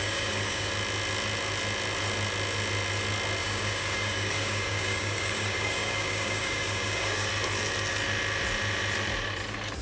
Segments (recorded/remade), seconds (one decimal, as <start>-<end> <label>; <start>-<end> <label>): 0.0-0.7 remade; 0.7-3.4 recorded; 3.4-7.3 remade; 7.3-9.8 recorded